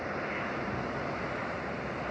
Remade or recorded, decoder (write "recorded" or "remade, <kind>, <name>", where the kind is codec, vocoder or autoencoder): recorded